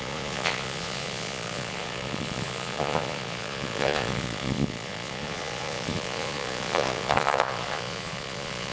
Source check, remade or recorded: remade